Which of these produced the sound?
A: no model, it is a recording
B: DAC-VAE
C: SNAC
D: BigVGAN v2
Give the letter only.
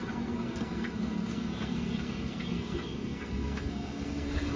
C